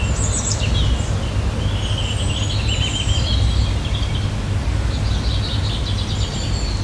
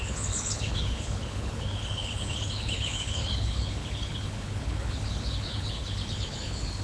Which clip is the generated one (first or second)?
second